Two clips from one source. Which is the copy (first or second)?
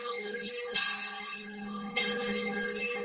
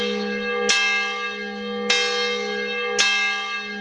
first